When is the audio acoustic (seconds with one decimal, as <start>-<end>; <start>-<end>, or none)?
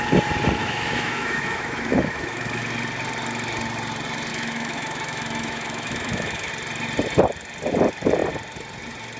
0.0-0.6; 2.6-4.3; 6.5-9.2